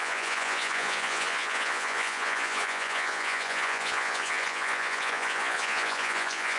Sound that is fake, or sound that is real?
fake